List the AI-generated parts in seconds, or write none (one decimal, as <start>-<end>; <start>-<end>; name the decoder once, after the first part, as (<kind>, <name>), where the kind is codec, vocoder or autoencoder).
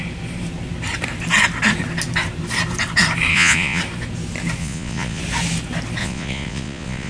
3.3-3.8 (vocoder, Vocos); 4.6-5.2; 6.0-7.1